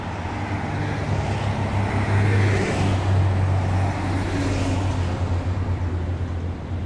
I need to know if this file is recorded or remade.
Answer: recorded